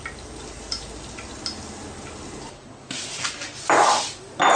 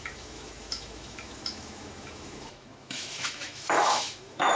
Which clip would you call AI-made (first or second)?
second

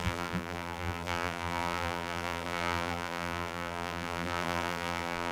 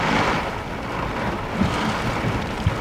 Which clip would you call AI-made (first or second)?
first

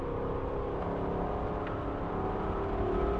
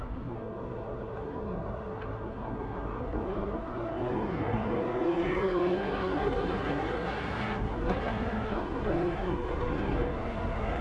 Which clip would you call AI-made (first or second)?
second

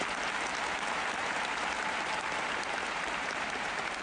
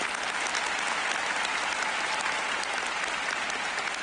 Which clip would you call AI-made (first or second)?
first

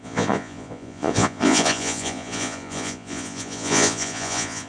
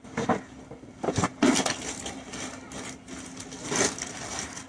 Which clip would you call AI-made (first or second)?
first